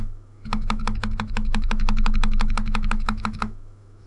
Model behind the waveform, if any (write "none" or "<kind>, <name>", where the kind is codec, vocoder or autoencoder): autoencoder, DAC-VAE